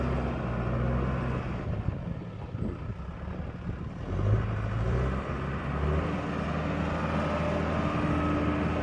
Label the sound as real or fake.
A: real